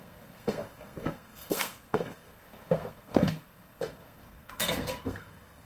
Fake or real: fake